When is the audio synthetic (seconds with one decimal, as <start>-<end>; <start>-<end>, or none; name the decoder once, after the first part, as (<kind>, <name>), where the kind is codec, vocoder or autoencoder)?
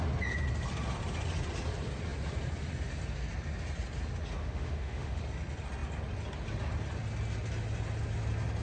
4.4-5.2 (autoencoder, DAC-VAE)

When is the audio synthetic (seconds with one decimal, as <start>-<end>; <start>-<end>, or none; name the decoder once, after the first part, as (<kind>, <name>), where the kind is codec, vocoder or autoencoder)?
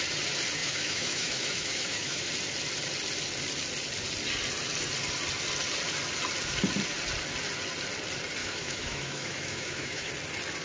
0.6-2.3 (autoencoder, DAC-VAE); 8.4-10.1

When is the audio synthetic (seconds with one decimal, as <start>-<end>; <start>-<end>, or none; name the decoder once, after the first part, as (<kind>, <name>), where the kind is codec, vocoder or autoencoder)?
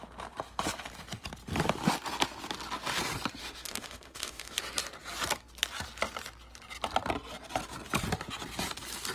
3.4-4.6 (autoencoder, DAC-VAE)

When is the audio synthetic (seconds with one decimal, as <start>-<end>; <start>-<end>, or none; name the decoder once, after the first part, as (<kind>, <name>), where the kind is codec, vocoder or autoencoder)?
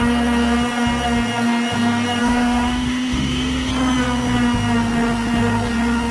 2.2-3.7 (autoencoder, DAC-VAE)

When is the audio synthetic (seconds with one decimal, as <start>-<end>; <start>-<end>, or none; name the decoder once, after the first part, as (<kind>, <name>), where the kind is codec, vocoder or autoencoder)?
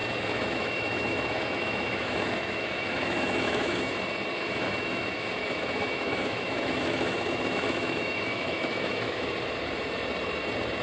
0.0-3.9 (autoencoder, DAC-VAE); 4.3-9.3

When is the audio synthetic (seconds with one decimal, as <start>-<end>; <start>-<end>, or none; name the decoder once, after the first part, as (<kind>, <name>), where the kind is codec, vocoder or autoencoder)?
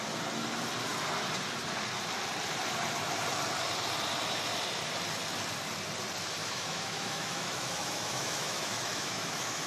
6.4-9.7 (autoencoder, DAC-VAE)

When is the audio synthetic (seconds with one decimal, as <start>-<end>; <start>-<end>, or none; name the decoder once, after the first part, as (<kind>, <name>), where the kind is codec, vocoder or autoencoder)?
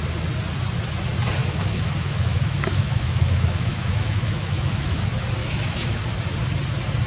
1.4-5.0 (autoencoder, DAC-VAE); 5.4-6.0